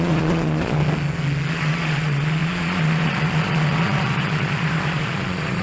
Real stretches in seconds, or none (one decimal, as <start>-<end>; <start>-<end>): 0.8-1.5